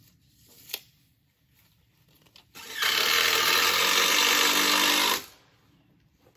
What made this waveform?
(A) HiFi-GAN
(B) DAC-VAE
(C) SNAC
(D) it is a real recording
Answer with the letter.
D